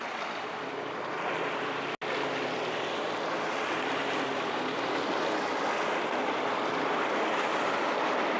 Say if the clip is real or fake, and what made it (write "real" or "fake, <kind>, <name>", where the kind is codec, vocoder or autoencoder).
real